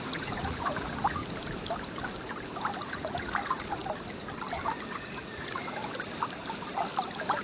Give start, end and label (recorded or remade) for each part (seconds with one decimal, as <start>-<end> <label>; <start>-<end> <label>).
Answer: 0.0-1.2 remade; 1.2-2.8 recorded; 2.8-3.8 remade; 3.8-4.9 recorded; 4.9-5.8 remade; 5.8-7.4 recorded

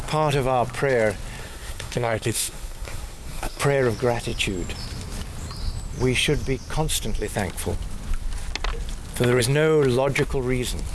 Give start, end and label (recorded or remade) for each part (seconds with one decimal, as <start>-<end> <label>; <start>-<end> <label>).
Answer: 0.0-1.4 recorded; 1.4-3.6 remade; 3.6-10.9 recorded

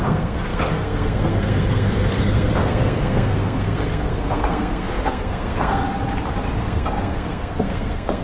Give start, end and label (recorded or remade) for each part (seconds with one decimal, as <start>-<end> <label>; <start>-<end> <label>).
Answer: 0.0-5.8 remade; 5.8-6.6 recorded; 6.6-8.2 remade

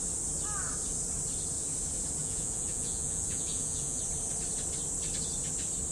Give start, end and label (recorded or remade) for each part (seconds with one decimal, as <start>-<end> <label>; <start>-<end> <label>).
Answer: 0.0-2.2 recorded; 2.2-4.0 remade; 4.0-5.9 recorded

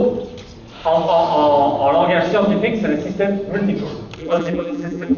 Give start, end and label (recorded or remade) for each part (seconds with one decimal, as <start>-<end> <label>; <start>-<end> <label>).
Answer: 0.0-4.2 recorded; 4.2-5.2 remade

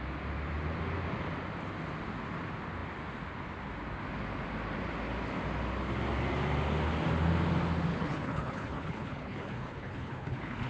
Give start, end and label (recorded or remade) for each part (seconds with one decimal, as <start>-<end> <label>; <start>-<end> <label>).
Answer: 0.0-7.9 recorded; 7.9-10.7 remade

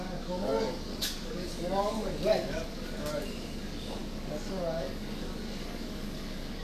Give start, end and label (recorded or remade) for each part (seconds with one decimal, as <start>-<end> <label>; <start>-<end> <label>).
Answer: 0.0-6.6 remade